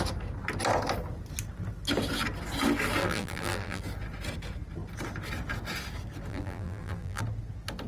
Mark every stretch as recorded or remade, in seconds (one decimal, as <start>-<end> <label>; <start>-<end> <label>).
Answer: 0.0-3.0 recorded; 3.0-3.8 remade; 3.8-6.3 recorded; 6.3-7.2 remade; 7.2-7.9 recorded